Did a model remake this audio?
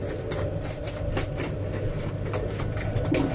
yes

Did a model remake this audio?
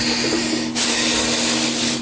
no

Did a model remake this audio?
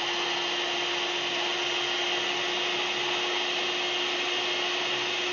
no